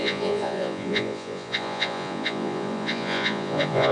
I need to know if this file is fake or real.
fake